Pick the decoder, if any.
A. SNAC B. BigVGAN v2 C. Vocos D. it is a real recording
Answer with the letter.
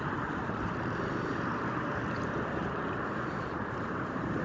B